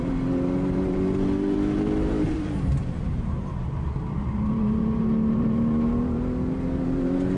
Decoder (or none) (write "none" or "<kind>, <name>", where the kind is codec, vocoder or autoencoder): vocoder, BigVGAN v2